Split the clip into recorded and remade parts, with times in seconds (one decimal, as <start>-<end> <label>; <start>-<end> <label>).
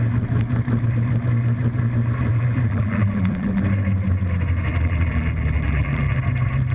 0.0-2.3 recorded; 2.3-3.6 remade; 3.6-4.7 recorded; 4.7-6.2 remade; 6.2-6.7 recorded